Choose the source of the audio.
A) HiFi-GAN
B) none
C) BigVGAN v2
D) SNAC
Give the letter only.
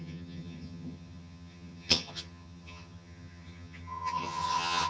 A